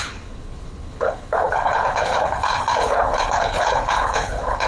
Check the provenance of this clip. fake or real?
fake